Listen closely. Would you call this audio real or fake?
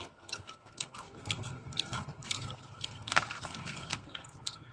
fake